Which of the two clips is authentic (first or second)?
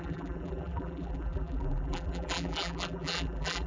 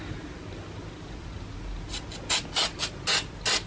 second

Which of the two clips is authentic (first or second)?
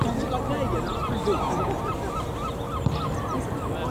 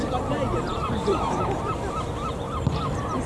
first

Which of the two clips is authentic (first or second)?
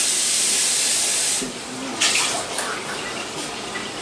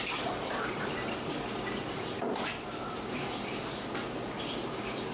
second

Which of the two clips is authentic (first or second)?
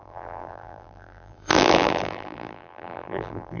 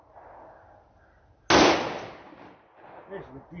second